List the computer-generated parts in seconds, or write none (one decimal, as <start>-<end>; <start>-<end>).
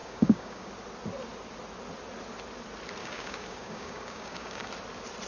0.0-0.7; 3.0-4.7